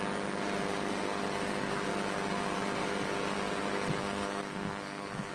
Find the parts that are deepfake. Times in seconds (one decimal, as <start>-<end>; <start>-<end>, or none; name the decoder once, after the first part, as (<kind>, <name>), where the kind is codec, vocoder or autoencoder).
4.0-5.3 (codec, SNAC)